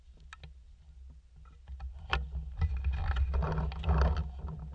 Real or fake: real